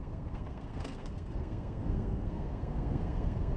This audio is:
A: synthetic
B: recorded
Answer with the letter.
A